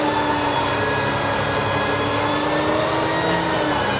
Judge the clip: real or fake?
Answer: real